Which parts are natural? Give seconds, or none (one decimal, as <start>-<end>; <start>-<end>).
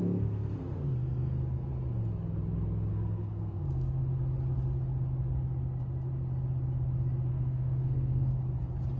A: 1.7-2.9; 4.0-7.3; 8.4-9.0